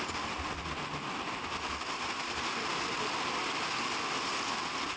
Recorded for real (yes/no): yes